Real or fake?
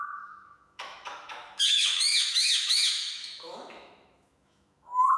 fake